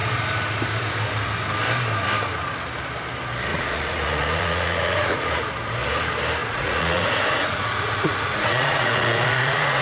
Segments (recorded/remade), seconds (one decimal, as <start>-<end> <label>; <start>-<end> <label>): 0.0-3.5 recorded; 3.5-5.4 remade; 5.4-6.4 recorded; 6.4-9.8 remade